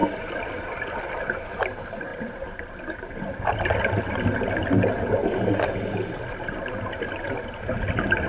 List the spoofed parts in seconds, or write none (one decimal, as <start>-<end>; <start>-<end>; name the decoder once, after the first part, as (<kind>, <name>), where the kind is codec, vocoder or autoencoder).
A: 0.0-1.3 (vocoder, BigVGAN v2); 2.1-4.0